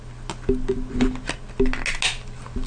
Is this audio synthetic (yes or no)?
no